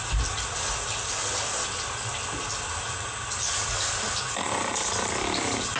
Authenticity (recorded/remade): recorded